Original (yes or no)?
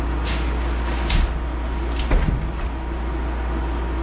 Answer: yes